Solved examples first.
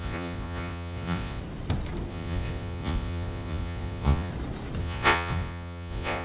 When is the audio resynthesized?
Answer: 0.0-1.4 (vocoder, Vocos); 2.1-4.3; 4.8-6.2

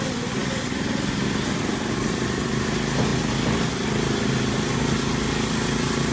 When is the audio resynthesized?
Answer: none

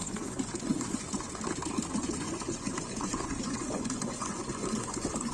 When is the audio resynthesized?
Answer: 0.0-1.3 (vocoder, Vocos); 2.0-5.3

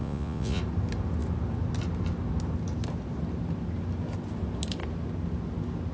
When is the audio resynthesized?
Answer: 0.0-0.6 (vocoder, Vocos)

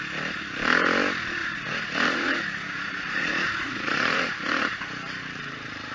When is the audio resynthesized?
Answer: 1.4-4.9 (vocoder, Vocos)

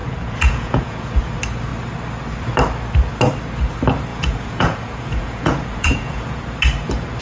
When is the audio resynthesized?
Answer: 0.0-1.2 (vocoder, Vocos); 4.1-6.4

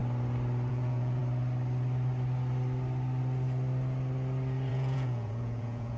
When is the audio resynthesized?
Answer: 0.7-1.2 (vocoder, Vocos); 4.7-6.0

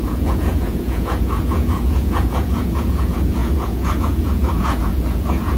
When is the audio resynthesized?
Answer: 0.0-5.6 (vocoder, Vocos)